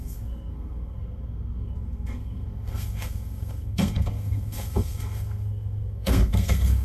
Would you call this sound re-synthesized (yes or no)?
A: yes